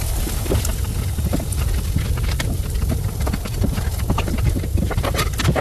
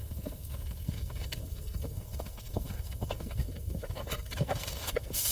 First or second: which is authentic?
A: first